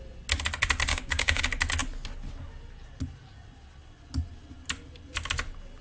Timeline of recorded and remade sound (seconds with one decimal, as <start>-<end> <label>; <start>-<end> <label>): 0.0-0.9 recorded; 0.9-1.4 remade; 1.4-5.8 recorded